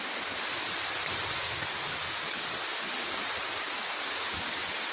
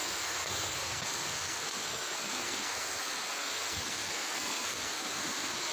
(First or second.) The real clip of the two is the first